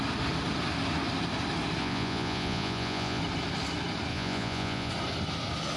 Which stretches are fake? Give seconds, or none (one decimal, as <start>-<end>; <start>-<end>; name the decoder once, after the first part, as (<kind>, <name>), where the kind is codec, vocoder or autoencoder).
1.8-3.2 (vocoder, Vocos); 4.1-4.9